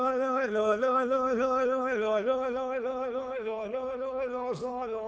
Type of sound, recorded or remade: remade